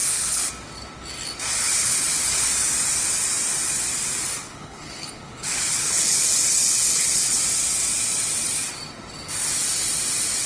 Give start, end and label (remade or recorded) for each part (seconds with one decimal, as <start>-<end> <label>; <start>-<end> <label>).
0.0-0.5 remade; 0.5-1.6 recorded; 1.6-2.5 remade; 2.5-4.4 recorded; 4.4-7.4 remade; 7.4-10.5 recorded